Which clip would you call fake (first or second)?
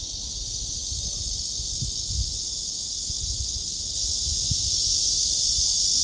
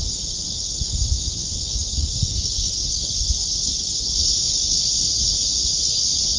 second